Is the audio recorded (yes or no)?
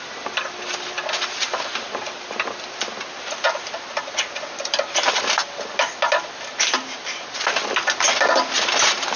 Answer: no